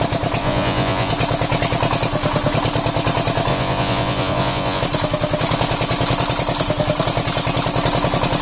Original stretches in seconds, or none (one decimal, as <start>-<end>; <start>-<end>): 0.0-0.4; 1.1-3.5; 4.8-8.4